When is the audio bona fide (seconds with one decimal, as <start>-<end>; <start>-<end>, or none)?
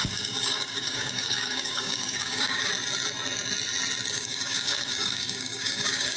2.7-4.1